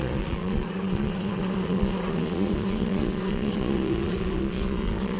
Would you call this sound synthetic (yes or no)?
yes